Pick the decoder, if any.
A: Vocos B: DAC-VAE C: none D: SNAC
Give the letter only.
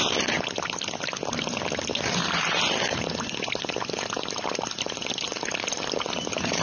C